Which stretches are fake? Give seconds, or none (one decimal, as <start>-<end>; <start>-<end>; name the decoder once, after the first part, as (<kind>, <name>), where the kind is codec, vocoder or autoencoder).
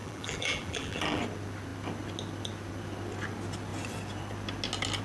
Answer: 0.0-1.2 (vocoder, BigVGAN v2)